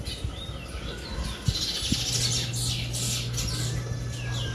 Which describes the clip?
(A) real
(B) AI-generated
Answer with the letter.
A